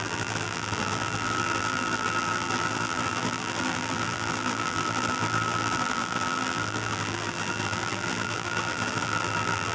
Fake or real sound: fake